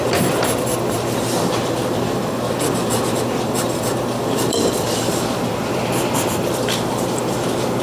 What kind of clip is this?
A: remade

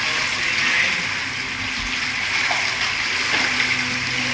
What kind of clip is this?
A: recorded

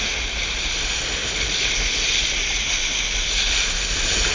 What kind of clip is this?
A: recorded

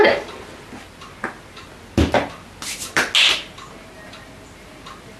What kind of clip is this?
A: recorded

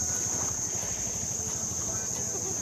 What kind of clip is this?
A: recorded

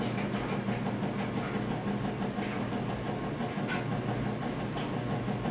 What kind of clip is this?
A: recorded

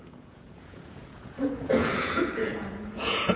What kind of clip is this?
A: remade